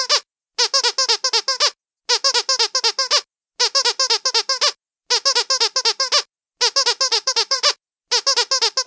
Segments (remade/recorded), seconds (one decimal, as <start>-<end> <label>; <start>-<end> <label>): 0.0-7.1 recorded; 7.1-7.7 remade; 7.7-8.9 recorded